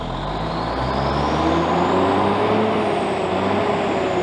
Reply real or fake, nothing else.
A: real